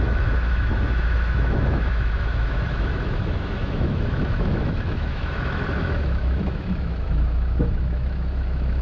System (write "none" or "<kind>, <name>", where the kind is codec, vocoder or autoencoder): autoencoder, DAC-VAE